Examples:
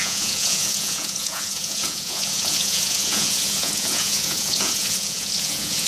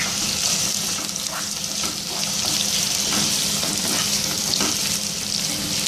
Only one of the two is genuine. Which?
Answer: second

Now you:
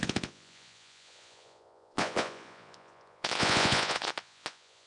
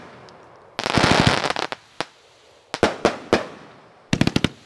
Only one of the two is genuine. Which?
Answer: second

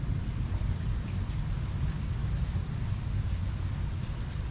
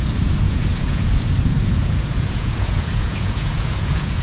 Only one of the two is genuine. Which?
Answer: first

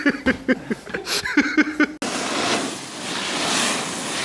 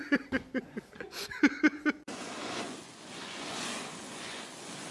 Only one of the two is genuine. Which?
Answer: first